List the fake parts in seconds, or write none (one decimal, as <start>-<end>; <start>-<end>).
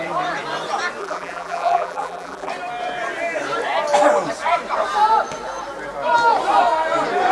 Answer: 1.0-2.5